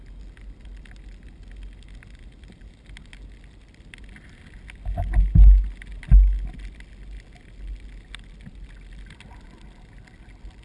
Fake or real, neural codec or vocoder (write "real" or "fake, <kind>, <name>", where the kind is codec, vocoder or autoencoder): real